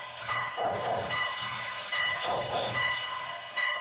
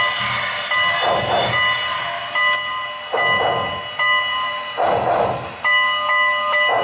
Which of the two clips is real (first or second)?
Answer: second